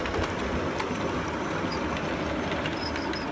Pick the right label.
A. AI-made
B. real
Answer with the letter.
B